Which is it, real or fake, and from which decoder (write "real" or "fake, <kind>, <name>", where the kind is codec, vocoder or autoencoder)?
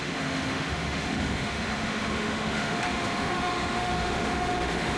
fake, autoencoder, DAC-VAE